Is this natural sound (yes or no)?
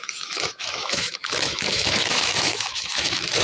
no